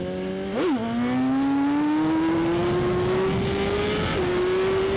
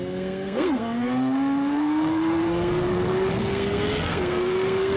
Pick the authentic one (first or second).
first